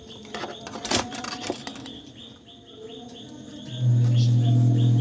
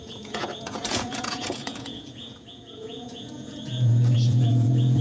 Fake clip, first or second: second